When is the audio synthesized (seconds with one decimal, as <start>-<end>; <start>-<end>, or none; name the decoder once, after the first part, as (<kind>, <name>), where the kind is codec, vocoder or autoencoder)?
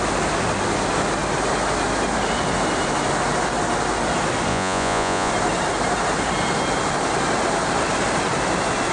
4.5-5.3 (vocoder, Vocos)